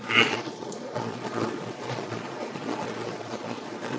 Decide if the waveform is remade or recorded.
remade